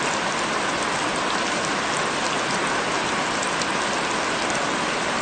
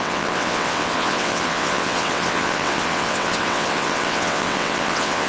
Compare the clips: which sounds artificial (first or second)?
second